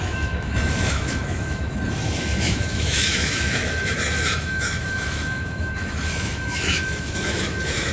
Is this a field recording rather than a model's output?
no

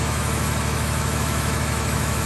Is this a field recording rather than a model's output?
no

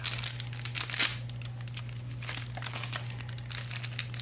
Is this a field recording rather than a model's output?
yes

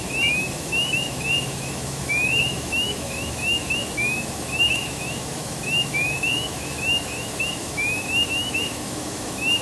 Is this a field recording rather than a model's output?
no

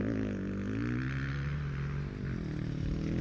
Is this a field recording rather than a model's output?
yes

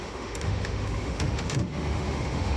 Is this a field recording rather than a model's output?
no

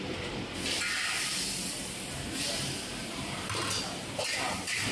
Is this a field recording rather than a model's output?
yes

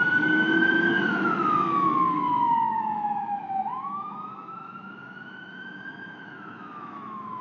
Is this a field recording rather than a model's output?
no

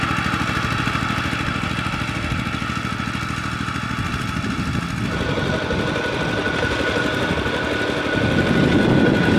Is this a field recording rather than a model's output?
yes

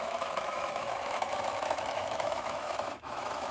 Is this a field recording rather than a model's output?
no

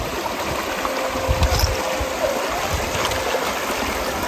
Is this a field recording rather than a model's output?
yes